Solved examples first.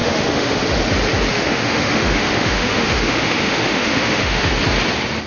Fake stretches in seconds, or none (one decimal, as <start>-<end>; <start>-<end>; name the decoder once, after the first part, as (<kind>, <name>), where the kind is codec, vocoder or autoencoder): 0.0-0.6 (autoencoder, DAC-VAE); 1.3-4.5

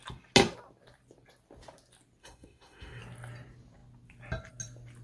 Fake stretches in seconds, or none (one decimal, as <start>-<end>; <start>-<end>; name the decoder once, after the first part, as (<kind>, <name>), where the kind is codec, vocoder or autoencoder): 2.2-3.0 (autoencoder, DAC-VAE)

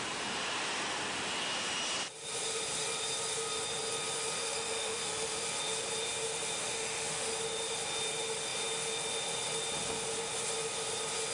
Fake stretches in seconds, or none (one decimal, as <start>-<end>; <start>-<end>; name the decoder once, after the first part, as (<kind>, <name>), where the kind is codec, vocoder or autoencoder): 4.4-5.4 (autoencoder, DAC-VAE); 6.6-7.3

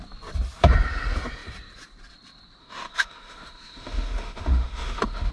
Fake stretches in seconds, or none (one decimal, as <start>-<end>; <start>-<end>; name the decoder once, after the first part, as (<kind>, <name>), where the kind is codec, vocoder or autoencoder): 2.6-5.3 (autoencoder, DAC-VAE)